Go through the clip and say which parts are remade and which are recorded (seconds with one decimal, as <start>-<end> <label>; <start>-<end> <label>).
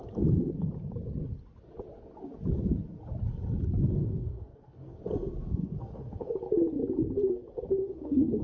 0.0-4.0 recorded; 4.0-5.0 remade; 5.0-5.4 recorded; 5.4-6.3 remade; 6.3-7.8 recorded; 7.8-8.4 remade